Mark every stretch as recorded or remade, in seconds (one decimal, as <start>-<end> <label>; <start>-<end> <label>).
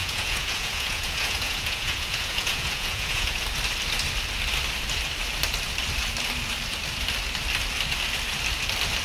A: 0.0-3.4 remade; 3.4-9.0 recorded